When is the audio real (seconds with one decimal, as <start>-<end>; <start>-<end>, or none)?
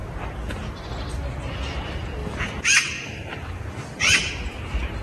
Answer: 0.0-2.2; 4.3-5.0